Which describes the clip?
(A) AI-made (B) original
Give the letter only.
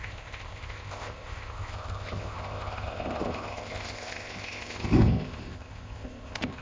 A